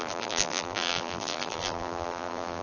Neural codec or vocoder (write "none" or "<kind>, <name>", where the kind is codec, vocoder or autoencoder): vocoder, BigVGAN v2